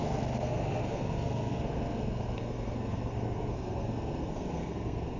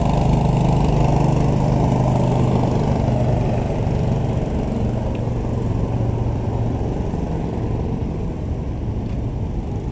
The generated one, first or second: first